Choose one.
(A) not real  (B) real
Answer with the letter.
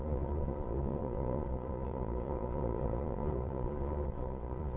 A